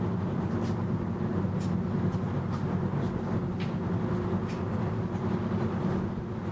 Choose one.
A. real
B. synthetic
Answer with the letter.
A